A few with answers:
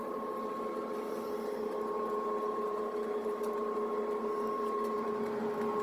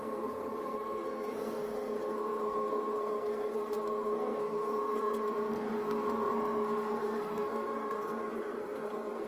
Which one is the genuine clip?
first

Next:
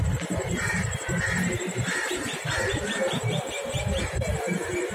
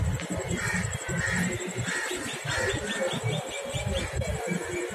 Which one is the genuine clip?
second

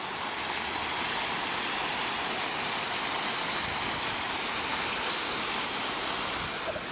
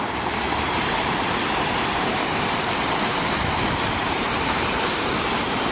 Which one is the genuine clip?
first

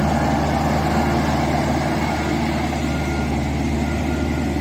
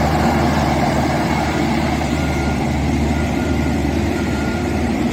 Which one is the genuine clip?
first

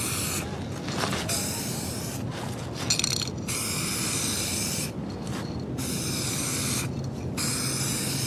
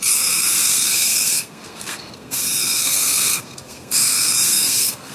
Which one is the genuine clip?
first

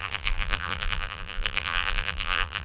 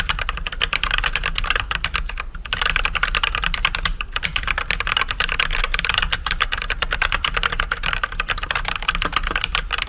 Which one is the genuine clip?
second